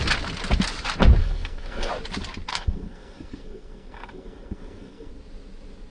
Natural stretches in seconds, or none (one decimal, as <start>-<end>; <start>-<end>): 0.0-1.2; 1.9-2.5; 5.1-5.9